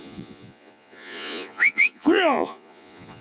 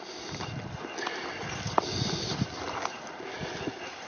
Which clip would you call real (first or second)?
second